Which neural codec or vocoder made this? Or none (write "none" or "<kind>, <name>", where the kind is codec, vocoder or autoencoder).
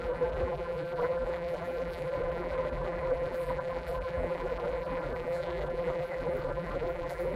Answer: vocoder, BigVGAN v2